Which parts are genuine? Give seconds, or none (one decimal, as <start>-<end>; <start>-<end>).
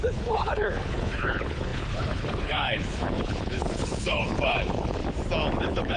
5.0-5.6